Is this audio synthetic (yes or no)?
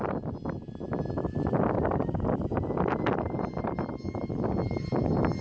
no